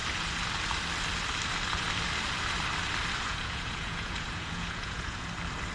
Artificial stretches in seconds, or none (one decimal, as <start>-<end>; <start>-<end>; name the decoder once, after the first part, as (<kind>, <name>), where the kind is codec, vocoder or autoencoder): 3.3-5.3 (vocoder, Vocos)